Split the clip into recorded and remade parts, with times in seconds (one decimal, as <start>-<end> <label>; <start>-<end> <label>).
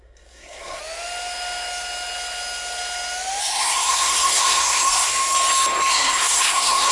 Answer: 0.0-0.8 remade; 0.8-3.4 recorded; 3.4-5.1 remade; 5.1-5.9 recorded; 5.9-6.9 remade